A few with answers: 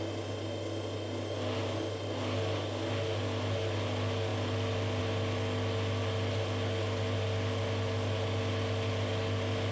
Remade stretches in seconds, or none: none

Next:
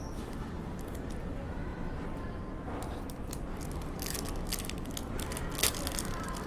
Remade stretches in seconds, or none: none